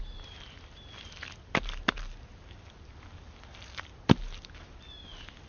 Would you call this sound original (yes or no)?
yes